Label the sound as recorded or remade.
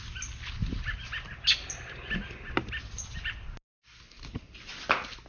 recorded